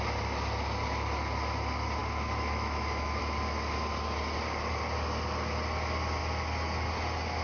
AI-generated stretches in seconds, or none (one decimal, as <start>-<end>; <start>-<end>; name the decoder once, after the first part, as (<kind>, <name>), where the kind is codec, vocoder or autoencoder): 2.0-3.2 (autoencoder, DAC-VAE)